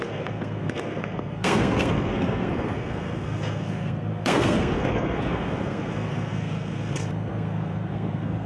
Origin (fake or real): fake